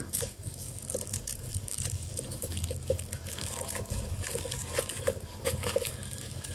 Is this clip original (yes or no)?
no